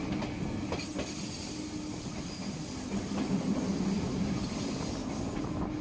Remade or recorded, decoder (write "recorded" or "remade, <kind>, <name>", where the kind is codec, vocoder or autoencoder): recorded